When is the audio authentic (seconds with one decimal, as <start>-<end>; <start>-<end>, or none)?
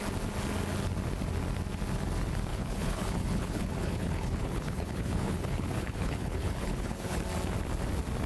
0.0-2.5; 7.2-8.3